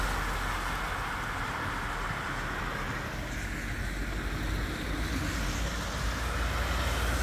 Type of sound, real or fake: real